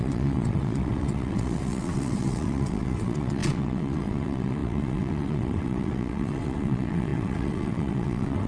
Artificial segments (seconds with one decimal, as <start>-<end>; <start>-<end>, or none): 0.0-8.5